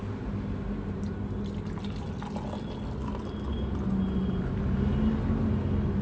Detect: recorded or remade recorded